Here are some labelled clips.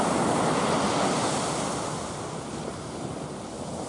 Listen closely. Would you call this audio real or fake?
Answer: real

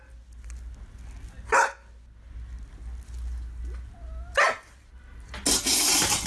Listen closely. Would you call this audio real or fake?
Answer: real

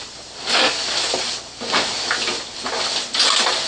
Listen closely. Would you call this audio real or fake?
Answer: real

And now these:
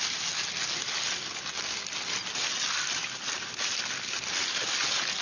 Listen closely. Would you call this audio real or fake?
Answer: real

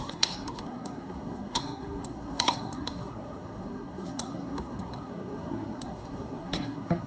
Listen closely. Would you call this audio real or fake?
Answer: fake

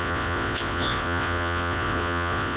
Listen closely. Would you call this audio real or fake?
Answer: fake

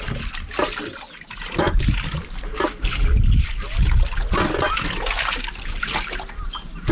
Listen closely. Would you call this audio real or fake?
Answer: real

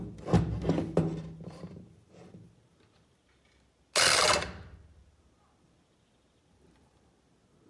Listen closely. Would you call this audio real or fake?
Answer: real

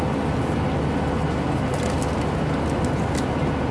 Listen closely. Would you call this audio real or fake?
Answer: real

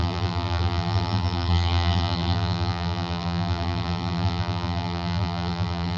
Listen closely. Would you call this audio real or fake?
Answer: fake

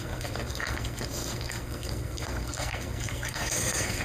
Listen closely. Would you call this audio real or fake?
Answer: fake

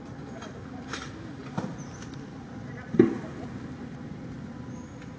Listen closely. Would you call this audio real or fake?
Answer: real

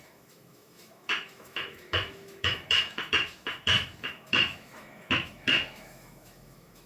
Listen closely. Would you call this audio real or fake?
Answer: fake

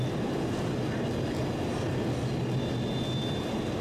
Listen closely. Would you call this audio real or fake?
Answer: real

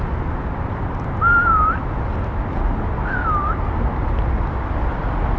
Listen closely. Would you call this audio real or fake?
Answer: real